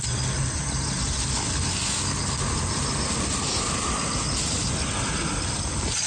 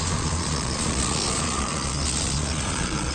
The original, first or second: first